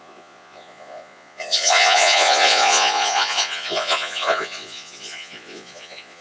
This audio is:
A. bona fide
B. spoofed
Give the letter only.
B